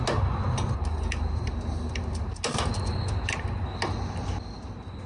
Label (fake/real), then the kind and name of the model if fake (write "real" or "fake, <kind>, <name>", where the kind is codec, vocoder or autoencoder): real